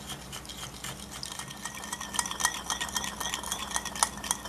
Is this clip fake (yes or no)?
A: no